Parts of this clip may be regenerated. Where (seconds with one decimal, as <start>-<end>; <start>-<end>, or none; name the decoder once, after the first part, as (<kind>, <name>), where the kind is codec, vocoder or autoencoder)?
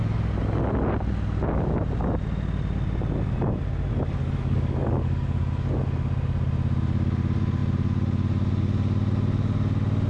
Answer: 4.2-5.8 (codec, DAC)